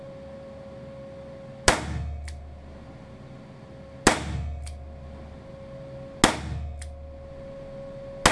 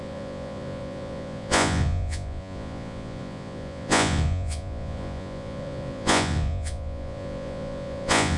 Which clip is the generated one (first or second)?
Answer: second